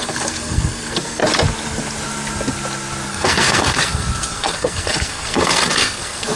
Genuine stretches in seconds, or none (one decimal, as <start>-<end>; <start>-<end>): 1.2-3.1